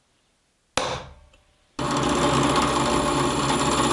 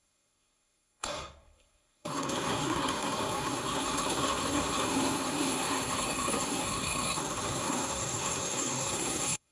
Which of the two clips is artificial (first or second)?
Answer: second